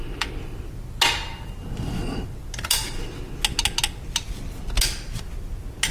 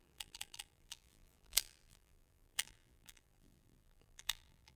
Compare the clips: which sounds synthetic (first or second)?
second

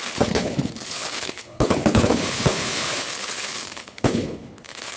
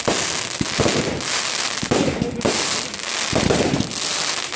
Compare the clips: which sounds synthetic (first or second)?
first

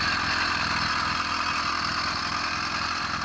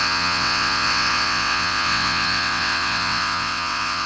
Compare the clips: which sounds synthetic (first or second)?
second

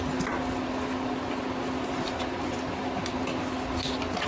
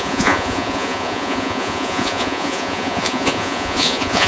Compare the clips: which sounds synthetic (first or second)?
second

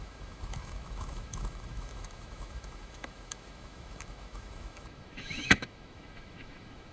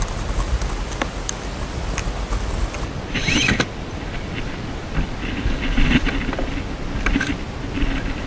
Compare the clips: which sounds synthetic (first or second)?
first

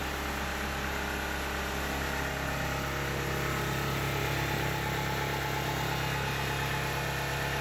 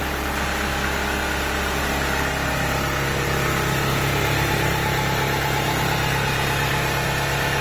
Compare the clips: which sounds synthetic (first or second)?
second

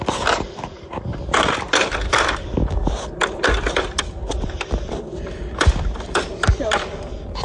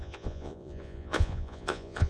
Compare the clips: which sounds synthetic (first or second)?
second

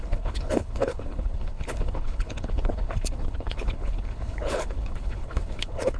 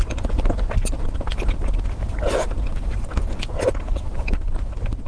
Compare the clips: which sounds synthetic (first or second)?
first